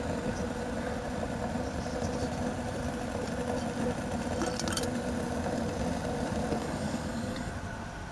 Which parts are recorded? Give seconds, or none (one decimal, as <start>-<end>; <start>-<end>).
0.0-6.6; 7.5-8.1